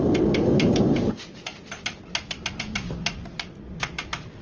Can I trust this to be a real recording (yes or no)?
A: yes